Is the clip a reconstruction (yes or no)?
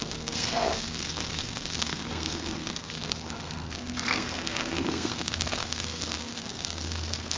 yes